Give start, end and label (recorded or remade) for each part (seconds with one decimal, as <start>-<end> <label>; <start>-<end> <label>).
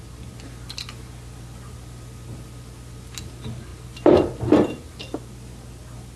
0.0-6.2 recorded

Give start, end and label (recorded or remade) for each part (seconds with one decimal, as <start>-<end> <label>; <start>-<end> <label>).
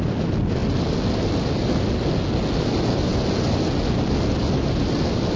0.0-5.4 recorded